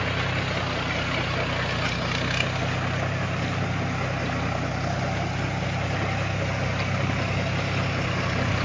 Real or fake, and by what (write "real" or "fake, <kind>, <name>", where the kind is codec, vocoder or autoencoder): real